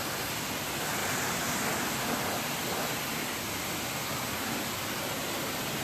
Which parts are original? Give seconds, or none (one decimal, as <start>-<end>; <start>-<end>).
0.0-5.8